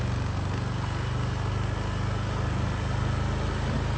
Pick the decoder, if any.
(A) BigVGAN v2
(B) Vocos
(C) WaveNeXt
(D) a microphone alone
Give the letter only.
D